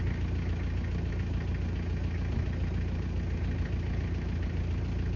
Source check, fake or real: real